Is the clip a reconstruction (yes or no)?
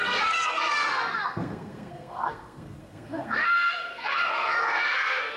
yes